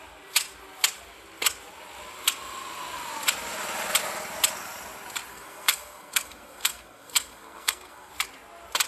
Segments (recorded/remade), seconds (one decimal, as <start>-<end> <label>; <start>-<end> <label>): 0.0-5.3 recorded; 5.3-8.1 remade; 8.1-8.9 recorded